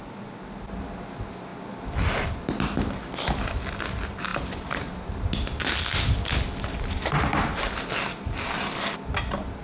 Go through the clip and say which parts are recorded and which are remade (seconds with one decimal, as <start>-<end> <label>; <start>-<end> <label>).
0.0-9.6 recorded